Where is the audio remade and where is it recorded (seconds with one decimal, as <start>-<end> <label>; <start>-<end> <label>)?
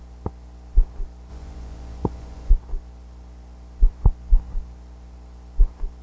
0.0-1.3 recorded; 1.3-2.5 remade; 2.5-6.0 recorded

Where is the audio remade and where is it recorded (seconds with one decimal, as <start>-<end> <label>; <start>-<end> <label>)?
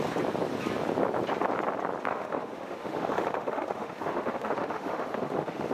0.0-2.1 recorded; 2.1-5.7 remade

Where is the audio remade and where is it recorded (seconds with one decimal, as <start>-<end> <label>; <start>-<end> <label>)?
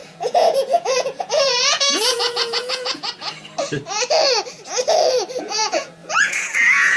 0.0-3.0 remade; 3.0-5.4 recorded; 5.4-7.0 remade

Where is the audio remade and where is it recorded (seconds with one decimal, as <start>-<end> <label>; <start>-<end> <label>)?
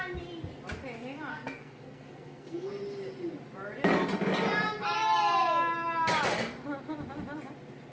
0.0-1.3 recorded; 1.3-2.7 remade; 2.7-7.9 recorded